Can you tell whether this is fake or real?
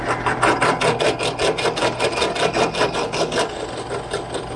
real